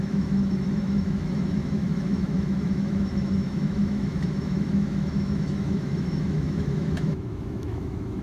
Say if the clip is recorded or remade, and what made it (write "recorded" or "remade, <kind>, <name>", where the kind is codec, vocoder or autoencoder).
remade, autoencoder, DAC-VAE